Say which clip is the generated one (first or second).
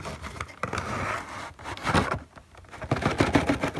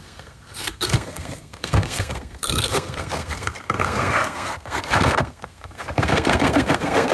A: second